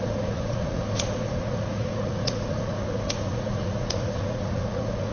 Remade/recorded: remade